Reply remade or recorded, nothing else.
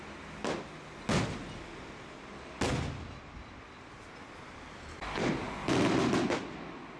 recorded